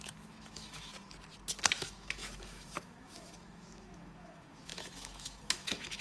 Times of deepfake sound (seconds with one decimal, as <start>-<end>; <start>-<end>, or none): 0.0-0.9; 1.8-6.0